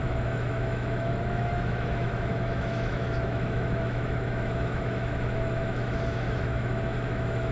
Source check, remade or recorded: remade